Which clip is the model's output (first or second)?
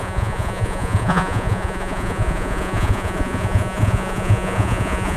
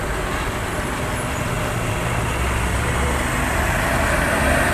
first